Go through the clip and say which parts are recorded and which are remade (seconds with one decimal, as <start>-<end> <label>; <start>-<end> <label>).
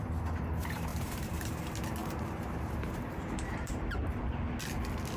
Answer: 0.0-0.9 recorded; 0.9-1.6 remade; 1.6-2.0 recorded; 2.0-4.4 remade; 4.4-5.2 recorded